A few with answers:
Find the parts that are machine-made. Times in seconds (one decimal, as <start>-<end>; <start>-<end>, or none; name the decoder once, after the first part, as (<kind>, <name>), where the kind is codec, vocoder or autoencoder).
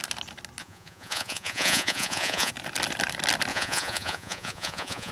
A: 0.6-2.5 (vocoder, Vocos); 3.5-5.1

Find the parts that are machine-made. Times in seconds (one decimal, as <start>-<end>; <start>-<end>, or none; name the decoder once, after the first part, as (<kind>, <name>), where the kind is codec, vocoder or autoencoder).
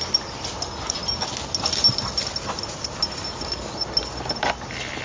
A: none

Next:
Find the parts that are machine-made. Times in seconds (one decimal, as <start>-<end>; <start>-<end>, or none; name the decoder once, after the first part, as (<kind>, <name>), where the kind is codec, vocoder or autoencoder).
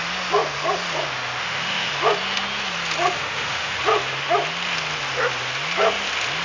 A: 1.4-1.9 (autoencoder, DAC-VAE); 3.1-3.8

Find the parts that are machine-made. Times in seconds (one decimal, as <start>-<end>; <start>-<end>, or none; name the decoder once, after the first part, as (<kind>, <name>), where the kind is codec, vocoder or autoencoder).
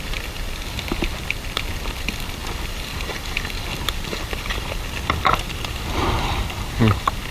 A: 2.4-6.8 (vocoder, BigVGAN v2)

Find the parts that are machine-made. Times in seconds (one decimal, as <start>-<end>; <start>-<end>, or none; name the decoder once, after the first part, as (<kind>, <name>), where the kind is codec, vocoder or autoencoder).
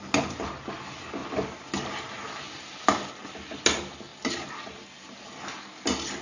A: none